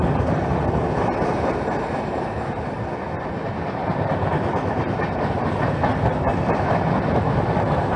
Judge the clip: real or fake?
real